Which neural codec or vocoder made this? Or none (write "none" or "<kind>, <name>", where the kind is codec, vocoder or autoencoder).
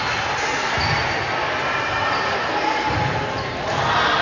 none